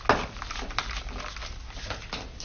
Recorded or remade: recorded